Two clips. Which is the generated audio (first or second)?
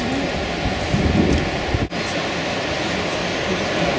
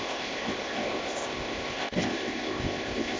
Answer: second